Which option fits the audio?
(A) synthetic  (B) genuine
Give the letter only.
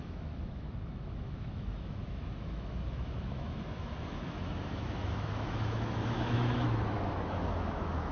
A